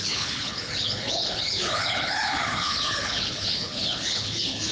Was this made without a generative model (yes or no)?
no